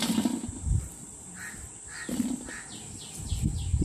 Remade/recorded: remade